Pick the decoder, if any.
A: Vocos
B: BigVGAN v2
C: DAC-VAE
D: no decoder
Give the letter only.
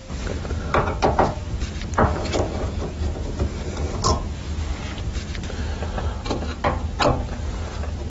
D